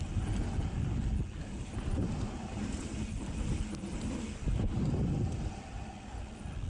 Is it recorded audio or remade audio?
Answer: recorded